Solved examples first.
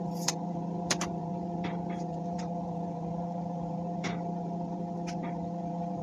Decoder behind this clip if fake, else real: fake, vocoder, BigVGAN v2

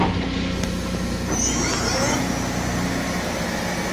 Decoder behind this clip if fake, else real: real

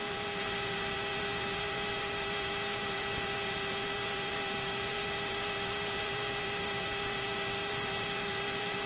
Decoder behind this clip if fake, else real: fake, vocoder, BigVGAN v2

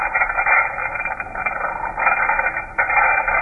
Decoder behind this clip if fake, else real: real